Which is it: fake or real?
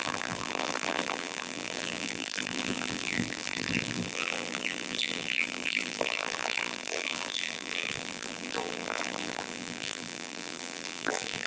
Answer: fake